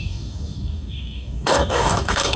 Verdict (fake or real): fake